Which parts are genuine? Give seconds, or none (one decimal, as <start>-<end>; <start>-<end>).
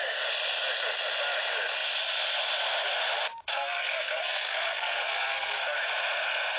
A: 0.0-3.5; 5.6-6.6